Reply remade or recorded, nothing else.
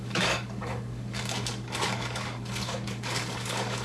remade